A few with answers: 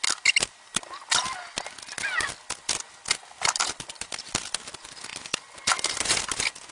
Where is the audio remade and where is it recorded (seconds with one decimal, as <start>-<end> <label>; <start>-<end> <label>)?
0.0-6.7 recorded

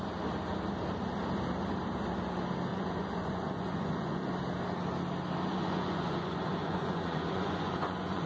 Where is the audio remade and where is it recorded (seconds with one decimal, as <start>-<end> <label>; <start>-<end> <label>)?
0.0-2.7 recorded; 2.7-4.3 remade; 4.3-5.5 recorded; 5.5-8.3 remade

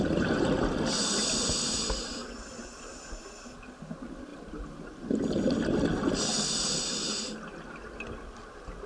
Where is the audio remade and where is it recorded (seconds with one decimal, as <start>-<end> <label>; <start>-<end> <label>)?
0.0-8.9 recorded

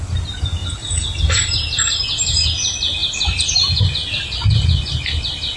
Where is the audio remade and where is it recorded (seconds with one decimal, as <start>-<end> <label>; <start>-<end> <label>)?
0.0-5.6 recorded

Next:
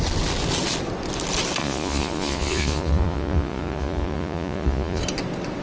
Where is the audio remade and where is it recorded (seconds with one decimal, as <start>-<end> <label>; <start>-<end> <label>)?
0.0-1.6 recorded; 1.6-5.0 remade; 5.0-5.6 recorded

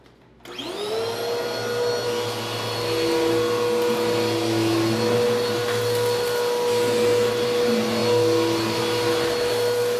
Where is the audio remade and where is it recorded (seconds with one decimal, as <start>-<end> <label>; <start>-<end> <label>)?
0.0-10.0 recorded